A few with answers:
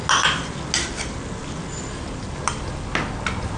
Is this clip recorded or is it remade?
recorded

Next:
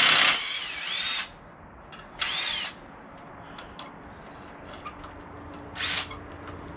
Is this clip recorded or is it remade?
recorded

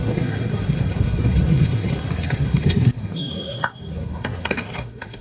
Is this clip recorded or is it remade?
remade